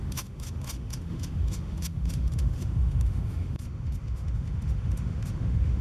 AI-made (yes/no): yes